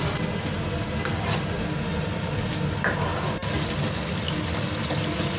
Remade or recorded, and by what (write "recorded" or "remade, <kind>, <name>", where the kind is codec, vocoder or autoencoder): recorded